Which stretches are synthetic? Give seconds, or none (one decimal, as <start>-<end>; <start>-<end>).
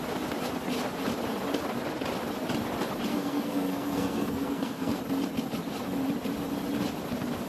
3.1-5.0